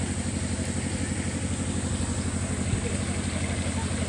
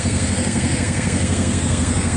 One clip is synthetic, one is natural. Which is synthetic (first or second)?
second